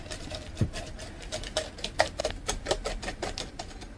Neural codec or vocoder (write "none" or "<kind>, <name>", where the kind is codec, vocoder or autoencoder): none